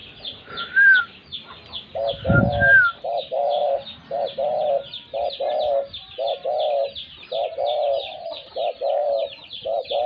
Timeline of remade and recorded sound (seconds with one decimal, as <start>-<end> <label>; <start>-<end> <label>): 0.0-1.0 remade; 1.0-3.6 recorded; 3.6-4.7 remade; 4.7-8.1 recorded; 8.1-8.6 remade; 8.6-9.0 recorded; 9.0-9.5 remade; 9.5-10.1 recorded